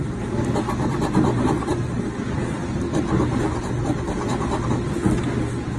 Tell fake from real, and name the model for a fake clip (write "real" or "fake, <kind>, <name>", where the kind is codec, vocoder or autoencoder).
real